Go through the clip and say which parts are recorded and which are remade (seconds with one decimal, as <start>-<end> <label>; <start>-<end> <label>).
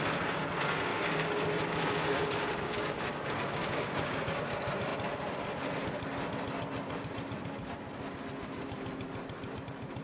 0.0-0.9 recorded; 0.9-4.4 remade; 4.4-10.0 recorded